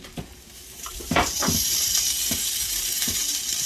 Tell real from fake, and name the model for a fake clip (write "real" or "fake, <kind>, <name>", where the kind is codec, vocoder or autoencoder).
fake, vocoder, BigVGAN v2